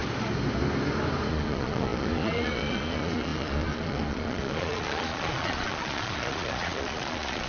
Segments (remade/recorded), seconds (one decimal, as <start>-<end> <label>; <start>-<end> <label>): 0.0-1.3 recorded; 1.3-7.5 remade

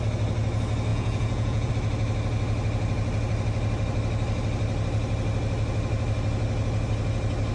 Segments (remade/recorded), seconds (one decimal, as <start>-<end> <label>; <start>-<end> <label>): 0.0-0.9 recorded; 0.9-1.7 remade; 1.7-7.5 recorded

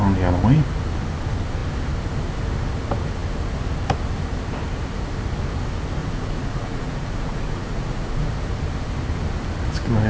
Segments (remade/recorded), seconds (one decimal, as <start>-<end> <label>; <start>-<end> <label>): 0.0-6.0 recorded; 6.0-8.3 remade; 8.3-10.1 recorded

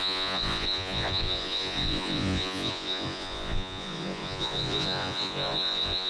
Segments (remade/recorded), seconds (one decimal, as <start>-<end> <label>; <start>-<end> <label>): 0.0-6.1 remade